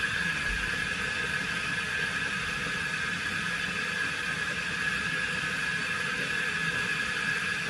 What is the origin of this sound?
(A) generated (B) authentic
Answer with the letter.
B